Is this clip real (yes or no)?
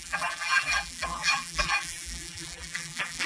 no